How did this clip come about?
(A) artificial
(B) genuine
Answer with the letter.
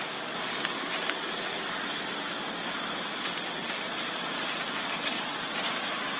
B